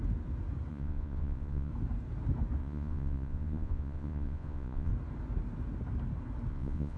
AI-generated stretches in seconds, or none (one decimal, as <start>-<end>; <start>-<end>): 0.7-1.7; 2.6-4.9; 6.5-7.0